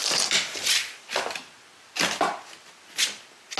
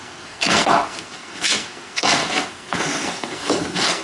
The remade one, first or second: second